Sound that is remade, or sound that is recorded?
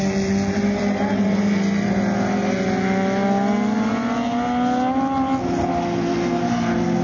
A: recorded